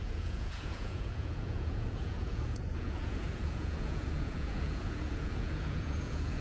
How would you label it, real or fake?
fake